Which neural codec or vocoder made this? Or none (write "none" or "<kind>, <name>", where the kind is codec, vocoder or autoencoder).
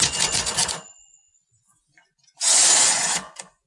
vocoder, Vocos